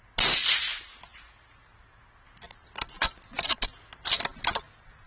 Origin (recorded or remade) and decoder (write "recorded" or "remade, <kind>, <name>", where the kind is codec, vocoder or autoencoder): recorded